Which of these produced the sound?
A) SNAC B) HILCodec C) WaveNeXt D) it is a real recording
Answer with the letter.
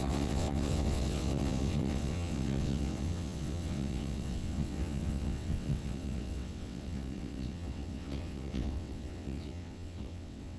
C